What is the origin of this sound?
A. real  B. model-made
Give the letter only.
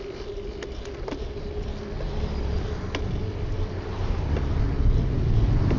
A